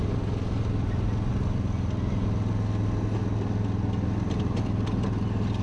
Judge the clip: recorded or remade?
recorded